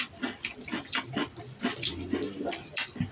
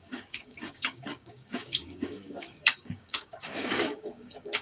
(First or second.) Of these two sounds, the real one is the first